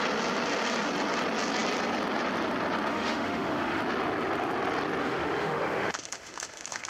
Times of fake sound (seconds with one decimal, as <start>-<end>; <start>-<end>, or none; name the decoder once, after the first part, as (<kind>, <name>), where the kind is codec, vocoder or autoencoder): 2.9-3.8 (autoencoder, DAC-VAE); 5.0-6.9